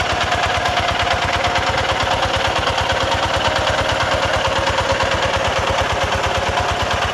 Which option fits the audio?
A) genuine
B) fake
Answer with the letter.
A